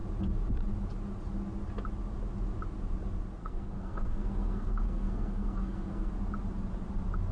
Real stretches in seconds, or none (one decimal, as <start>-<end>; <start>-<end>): 0.0-3.4; 6.1-7.3